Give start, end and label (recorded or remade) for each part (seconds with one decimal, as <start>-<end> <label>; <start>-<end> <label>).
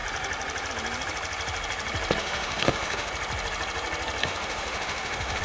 0.0-2.2 recorded; 2.2-3.1 remade; 3.1-4.2 recorded; 4.2-5.4 remade